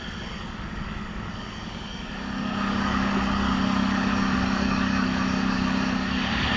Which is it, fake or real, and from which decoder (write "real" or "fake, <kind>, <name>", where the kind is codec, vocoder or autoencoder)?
fake, codec, DAC